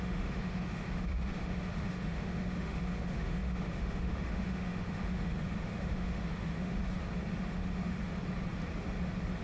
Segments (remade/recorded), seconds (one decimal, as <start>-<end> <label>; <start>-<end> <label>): 0.0-6.8 remade; 6.8-7.4 recorded; 7.4-8.0 remade; 8.0-9.4 recorded